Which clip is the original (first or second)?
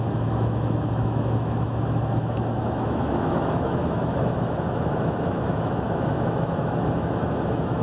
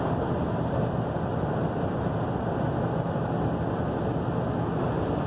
second